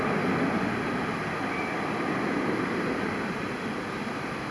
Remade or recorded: recorded